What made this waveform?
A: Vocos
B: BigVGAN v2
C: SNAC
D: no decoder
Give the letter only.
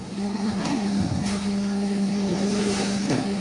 C